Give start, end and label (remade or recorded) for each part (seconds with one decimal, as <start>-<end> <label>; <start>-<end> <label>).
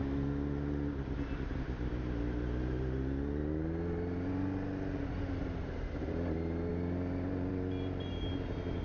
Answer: 0.0-8.8 recorded